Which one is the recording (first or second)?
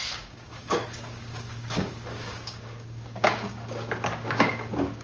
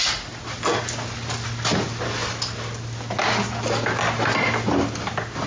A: second